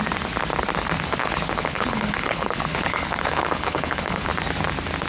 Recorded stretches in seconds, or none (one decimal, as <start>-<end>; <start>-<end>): 0.0-1.2; 4.3-5.1